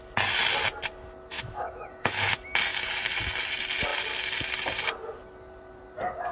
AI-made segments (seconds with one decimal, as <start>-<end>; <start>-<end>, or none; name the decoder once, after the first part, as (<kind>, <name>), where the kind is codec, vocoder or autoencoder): 1.3-2.3 (autoencoder, DAC-VAE)